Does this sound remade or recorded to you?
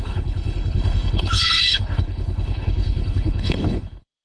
remade